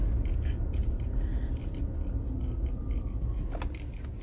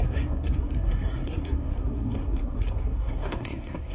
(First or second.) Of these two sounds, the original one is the first